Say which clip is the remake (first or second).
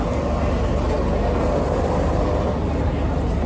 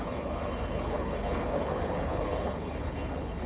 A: second